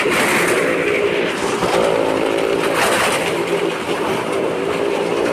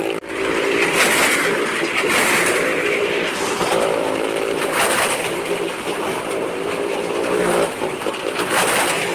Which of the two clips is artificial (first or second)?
second